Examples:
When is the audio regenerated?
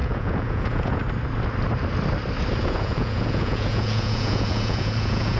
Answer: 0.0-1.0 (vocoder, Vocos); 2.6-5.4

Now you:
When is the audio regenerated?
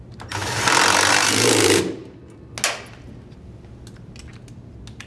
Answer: 0.0-0.4 (vocoder, BigVGAN v2); 1.1-2.0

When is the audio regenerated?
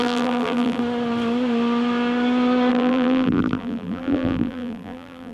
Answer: 0.0-0.8 (vocoder, BigVGAN v2); 2.7-5.3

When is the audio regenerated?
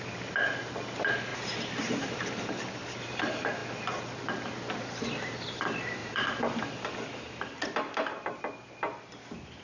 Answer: 1.3-2.6 (vocoder, BigVGAN v2); 6.0-8.4